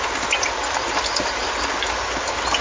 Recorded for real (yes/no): yes